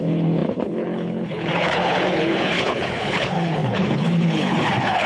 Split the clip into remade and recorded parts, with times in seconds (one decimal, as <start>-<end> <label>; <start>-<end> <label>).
0.0-5.1 remade